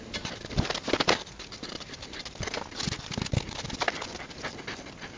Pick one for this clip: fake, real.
real